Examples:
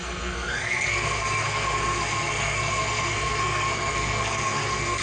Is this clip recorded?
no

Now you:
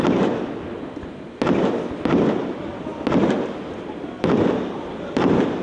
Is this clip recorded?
yes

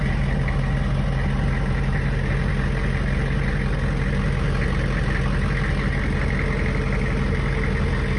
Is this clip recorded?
yes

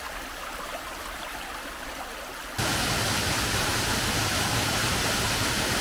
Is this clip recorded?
yes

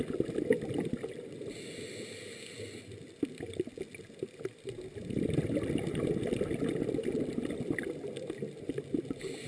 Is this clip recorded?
yes